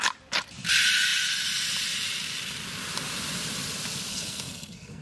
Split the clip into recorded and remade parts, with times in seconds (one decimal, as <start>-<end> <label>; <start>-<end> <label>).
0.0-4.1 recorded; 4.1-5.0 remade